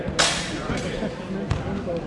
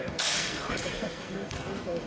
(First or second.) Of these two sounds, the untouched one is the first